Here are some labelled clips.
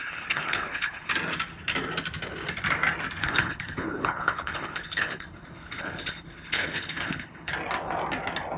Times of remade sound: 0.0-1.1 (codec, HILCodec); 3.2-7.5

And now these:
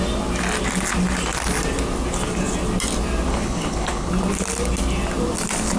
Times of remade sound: 3.3-4.1 (codec, HILCodec)

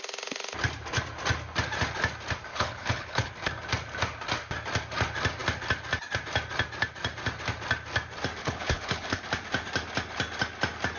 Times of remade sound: 2.5-3.3 (codec, HILCodec); 8.4-9.2

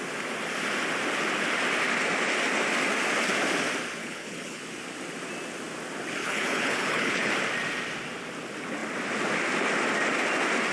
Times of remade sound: 4.0-4.6 (codec, HILCodec); 6.2-7.3

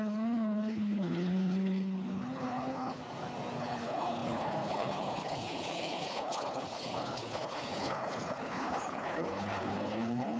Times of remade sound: 0.0-3.0 (codec, HILCodec); 3.6-10.4